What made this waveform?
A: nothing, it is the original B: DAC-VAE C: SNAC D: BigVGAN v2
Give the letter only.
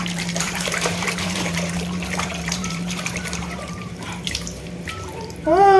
D